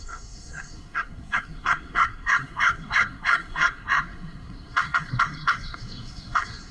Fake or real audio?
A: fake